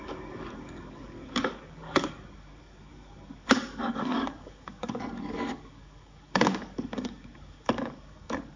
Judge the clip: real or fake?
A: fake